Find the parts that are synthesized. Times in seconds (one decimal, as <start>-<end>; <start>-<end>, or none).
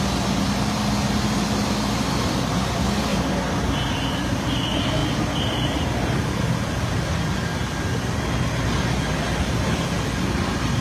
none